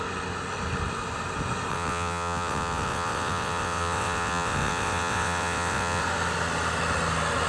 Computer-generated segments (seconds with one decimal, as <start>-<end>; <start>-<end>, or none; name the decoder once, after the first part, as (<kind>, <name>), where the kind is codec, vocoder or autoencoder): 1.7-6.0 (vocoder, WaveNeXt)